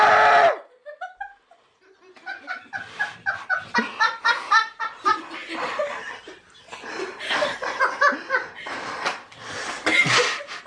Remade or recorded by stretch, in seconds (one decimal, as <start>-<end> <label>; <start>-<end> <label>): 0.0-10.7 recorded